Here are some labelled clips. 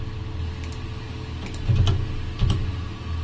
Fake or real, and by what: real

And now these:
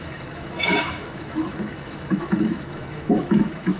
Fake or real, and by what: fake, autoencoder, DAC-VAE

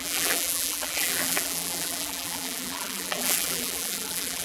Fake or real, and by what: fake, vocoder, BigVGAN v2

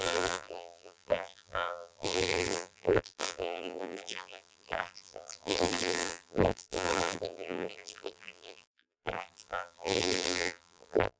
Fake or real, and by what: fake, vocoder, BigVGAN v2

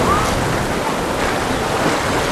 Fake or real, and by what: real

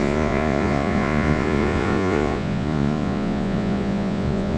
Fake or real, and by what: fake, vocoder, Vocos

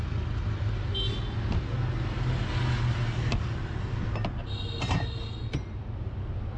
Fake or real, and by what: real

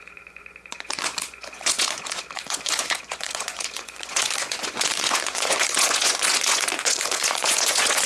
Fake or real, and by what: fake, vocoder, Vocos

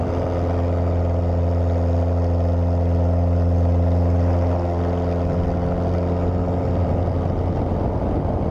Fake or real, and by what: real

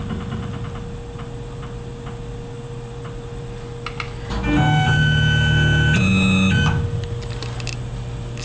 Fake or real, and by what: real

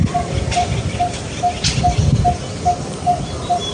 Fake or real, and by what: real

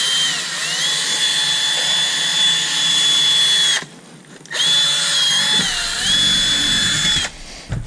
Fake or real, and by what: real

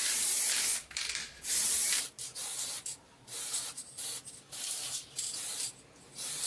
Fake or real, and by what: fake, vocoder, BigVGAN v2